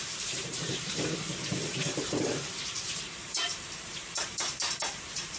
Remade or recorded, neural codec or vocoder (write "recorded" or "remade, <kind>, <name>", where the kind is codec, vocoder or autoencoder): remade, vocoder, BigVGAN v2